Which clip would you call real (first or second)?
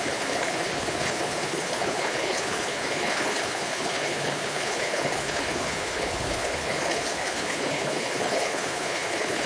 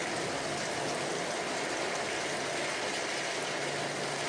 second